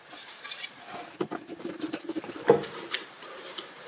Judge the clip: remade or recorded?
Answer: remade